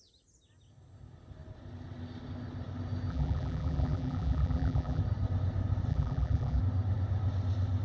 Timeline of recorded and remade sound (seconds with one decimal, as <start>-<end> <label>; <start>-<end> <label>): 0.0-3.1 recorded; 3.1-5.0 remade; 5.0-5.9 recorded; 5.9-6.6 remade; 6.6-7.8 recorded